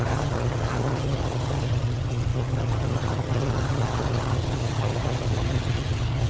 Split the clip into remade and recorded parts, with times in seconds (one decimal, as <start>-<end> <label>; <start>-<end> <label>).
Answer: 0.0-6.3 remade